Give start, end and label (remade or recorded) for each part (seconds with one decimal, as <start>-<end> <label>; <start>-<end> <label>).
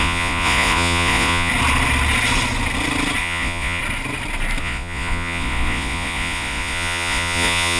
0.0-1.5 remade; 1.5-3.2 recorded; 3.2-3.8 remade; 3.8-4.6 recorded; 4.6-7.8 remade